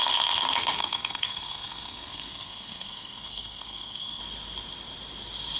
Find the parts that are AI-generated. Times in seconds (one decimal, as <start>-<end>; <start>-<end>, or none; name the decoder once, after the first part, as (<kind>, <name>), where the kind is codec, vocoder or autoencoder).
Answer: 0.8-4.2 (codec, SNAC)